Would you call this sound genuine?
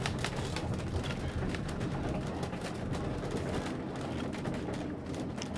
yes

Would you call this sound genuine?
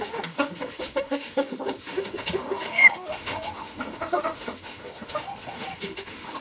no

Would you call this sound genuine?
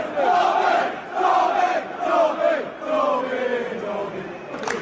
yes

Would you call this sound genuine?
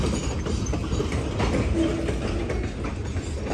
yes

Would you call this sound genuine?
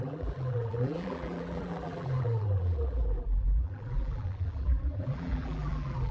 no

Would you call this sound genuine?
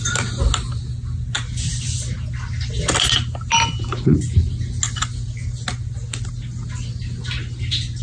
yes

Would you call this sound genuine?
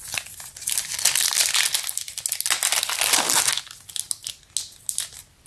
yes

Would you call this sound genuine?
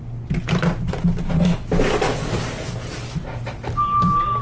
yes